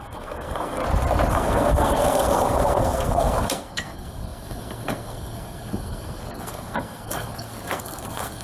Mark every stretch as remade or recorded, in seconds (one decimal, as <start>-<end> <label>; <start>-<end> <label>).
0.0-0.8 remade; 0.8-1.3 recorded; 1.3-8.4 remade